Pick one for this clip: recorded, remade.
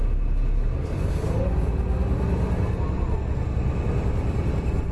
recorded